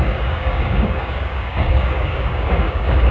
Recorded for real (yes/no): no